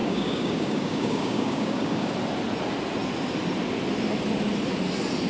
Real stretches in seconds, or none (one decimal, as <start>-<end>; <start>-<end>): 2.1-5.3